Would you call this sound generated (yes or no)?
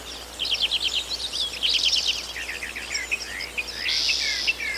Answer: no